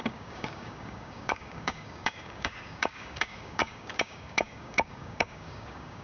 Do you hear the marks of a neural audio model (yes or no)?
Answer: yes